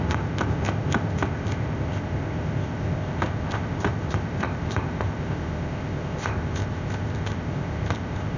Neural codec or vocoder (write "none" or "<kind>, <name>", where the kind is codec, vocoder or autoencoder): codec, ZipCodec